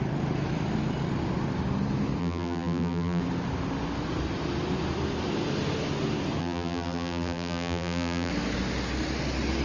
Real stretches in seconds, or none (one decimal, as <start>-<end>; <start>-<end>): 0.0-2.2; 3.2-6.4; 8.3-9.6